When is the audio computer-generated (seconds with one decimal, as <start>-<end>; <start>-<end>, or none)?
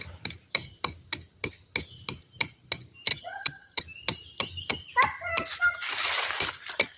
3.1-3.8